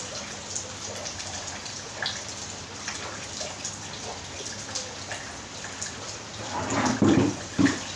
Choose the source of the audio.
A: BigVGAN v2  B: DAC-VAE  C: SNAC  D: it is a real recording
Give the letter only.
A